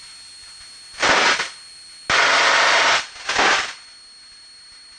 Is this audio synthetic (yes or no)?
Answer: no